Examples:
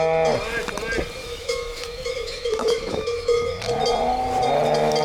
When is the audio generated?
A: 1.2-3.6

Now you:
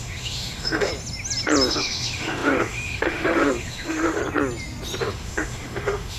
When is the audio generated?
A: 0.0-0.9; 1.7-4.2; 5.0-6.2

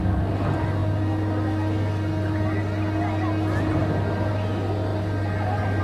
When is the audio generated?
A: 4.9-5.8

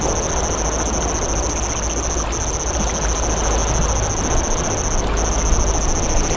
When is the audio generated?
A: none

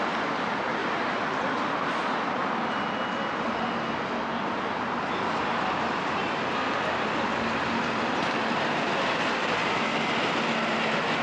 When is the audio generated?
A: none